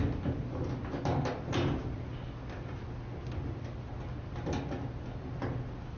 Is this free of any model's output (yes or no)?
yes